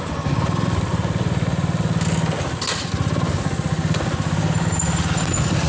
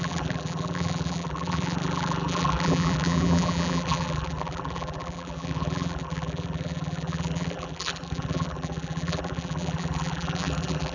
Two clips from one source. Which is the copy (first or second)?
second